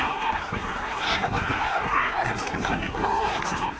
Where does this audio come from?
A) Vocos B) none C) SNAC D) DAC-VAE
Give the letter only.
C